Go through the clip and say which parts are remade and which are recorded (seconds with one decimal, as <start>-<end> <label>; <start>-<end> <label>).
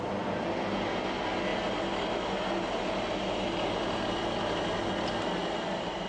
0.0-6.1 recorded